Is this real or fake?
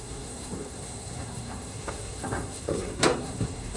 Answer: fake